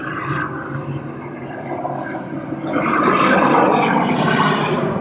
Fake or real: fake